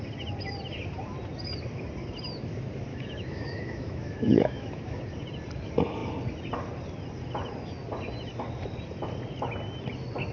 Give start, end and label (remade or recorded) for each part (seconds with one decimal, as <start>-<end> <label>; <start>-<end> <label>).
0.0-2.9 recorded; 2.9-5.0 remade; 5.0-10.3 recorded